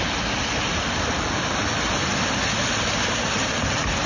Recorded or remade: recorded